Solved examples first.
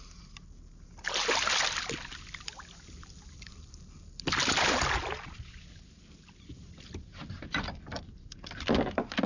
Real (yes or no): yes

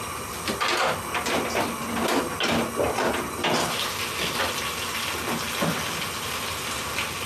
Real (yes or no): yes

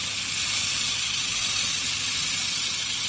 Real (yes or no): yes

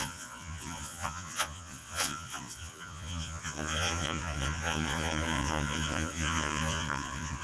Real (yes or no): no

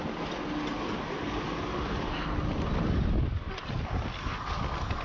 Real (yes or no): yes